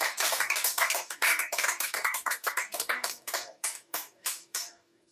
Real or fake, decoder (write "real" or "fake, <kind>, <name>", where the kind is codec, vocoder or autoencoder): fake, codec, DAC